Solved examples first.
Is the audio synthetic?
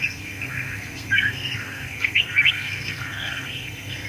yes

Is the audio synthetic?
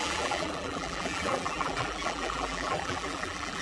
yes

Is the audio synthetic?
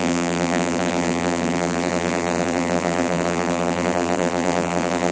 yes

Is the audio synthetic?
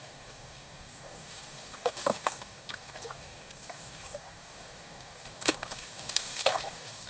yes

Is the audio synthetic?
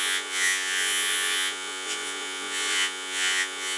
yes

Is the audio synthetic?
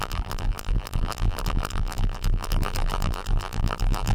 yes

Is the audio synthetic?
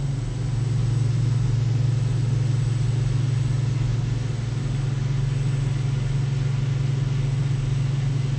no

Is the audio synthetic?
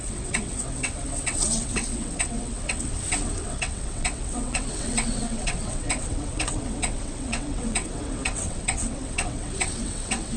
yes